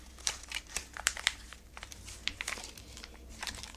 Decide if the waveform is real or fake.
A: fake